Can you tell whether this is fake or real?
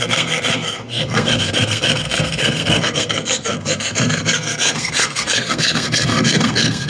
fake